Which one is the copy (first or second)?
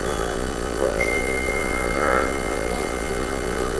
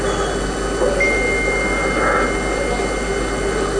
first